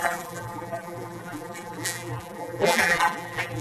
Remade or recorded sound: remade